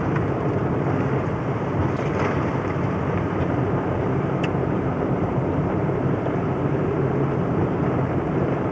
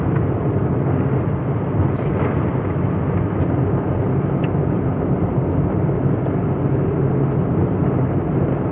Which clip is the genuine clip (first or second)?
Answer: second